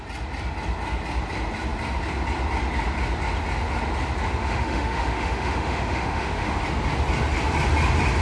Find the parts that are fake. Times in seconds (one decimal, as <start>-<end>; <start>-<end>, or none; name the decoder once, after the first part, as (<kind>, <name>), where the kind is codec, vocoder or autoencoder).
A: 4.4-6.6 (autoencoder, DAC-VAE)